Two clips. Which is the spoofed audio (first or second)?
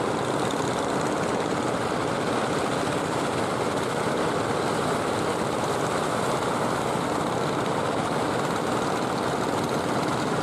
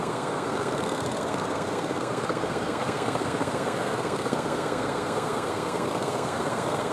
second